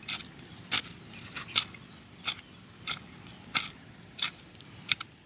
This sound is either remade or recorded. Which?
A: recorded